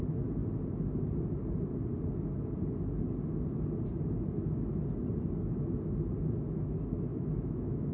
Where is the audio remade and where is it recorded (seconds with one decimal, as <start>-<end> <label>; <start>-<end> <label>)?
0.0-7.1 recorded; 7.1-7.9 remade